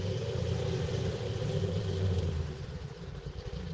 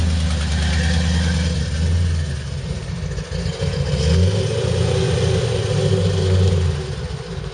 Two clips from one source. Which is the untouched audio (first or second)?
second